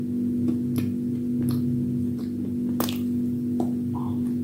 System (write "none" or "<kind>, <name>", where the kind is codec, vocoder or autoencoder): none